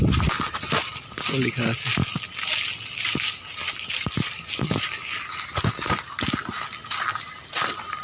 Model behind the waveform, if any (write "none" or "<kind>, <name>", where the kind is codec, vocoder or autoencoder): none